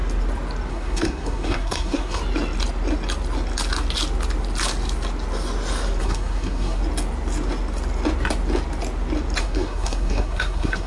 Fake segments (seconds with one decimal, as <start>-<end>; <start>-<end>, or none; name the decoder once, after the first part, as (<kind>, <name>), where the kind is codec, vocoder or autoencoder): 0.7-2.2 (codec, SNAC); 6.0-6.8; 9.4-10.9